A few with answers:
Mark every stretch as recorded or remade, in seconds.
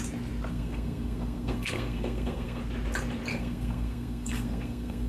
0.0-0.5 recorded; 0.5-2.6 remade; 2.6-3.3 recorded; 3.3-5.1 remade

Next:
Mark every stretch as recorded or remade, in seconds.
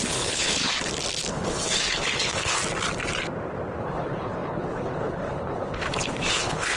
0.0-0.7 remade; 0.7-1.3 recorded; 1.3-2.6 remade; 2.6-3.8 recorded; 3.8-6.8 remade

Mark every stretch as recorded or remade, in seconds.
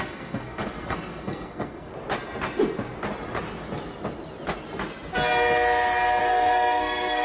0.0-1.9 remade; 1.9-6.2 recorded; 6.2-7.2 remade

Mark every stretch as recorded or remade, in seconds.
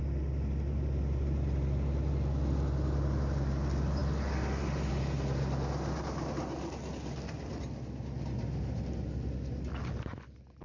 0.0-10.6 recorded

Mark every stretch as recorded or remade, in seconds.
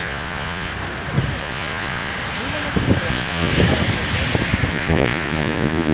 0.0-0.7 remade; 0.7-1.4 recorded; 1.4-2.1 remade; 2.1-3.1 recorded; 3.1-3.5 remade; 3.5-4.7 recorded; 4.7-5.9 remade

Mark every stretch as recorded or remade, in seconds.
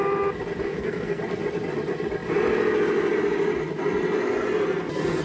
0.0-0.7 recorded; 0.7-1.2 remade; 1.2-5.2 recorded